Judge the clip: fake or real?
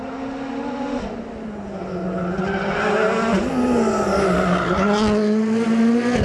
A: real